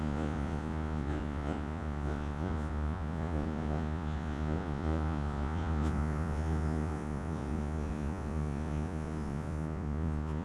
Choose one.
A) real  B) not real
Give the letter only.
B